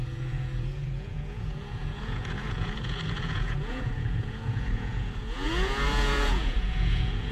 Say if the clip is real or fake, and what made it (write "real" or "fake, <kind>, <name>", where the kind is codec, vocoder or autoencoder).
fake, vocoder, Vocos